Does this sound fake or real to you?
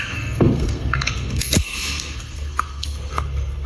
fake